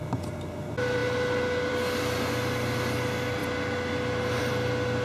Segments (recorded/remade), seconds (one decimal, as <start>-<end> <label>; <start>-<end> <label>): 0.0-5.0 recorded